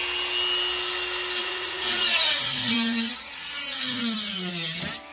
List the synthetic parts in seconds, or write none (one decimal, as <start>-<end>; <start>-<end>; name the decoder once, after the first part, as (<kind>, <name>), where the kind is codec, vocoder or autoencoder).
1.4-4.5 (vocoder, Vocos)